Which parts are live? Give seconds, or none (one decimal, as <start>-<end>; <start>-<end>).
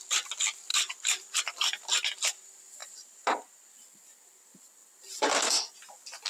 0.0-0.7; 1.4-2.8; 3.4-6.3